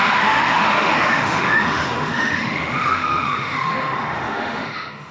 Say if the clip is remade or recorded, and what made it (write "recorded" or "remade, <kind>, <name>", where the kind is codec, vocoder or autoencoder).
remade, autoencoder, DAC-VAE